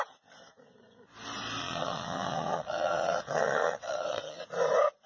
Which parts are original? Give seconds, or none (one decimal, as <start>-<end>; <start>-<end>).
0.0-1.6; 4.4-5.1